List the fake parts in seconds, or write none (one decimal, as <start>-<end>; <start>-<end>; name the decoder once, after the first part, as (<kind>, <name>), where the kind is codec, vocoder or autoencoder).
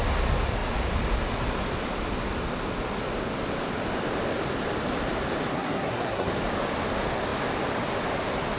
5.5-6.3 (codec, SNAC)